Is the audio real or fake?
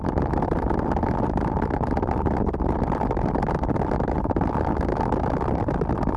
real